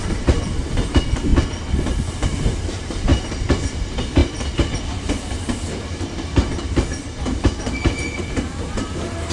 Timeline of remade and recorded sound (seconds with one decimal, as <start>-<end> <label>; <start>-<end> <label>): 0.0-1.3 remade; 1.3-2.1 recorded; 2.1-3.1 remade; 3.1-3.7 recorded; 3.7-4.2 remade; 4.2-7.1 recorded; 7.1-9.3 remade